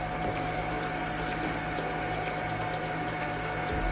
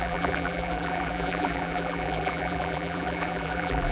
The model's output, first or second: second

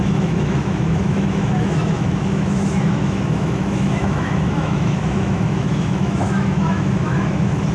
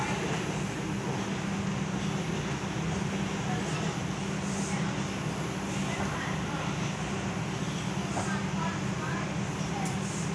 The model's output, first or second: first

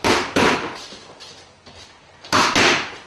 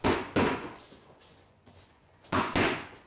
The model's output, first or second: second